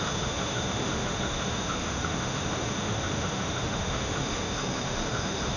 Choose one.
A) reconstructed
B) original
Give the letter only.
A